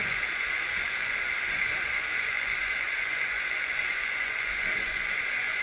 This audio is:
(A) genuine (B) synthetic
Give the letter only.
B